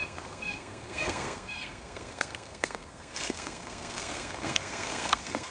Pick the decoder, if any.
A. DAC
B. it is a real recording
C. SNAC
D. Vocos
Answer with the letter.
C